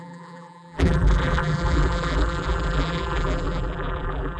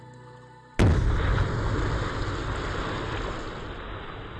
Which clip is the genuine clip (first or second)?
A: second